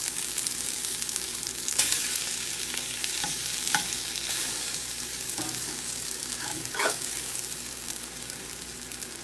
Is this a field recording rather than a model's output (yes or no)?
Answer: no